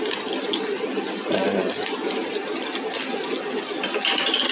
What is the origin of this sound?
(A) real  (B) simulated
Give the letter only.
A